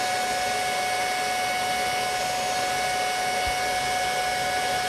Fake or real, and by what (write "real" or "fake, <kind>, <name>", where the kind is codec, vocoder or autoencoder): real